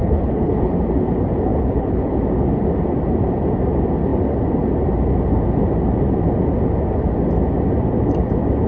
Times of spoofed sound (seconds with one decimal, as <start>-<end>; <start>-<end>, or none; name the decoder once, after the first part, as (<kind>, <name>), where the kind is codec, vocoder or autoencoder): 0.0-0.7 (codec, HILCodec); 1.5-2.1